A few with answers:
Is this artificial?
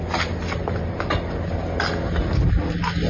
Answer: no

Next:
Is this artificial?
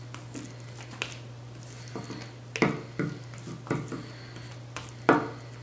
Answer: no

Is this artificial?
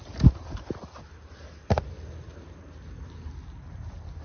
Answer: no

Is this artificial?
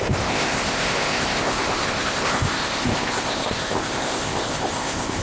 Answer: yes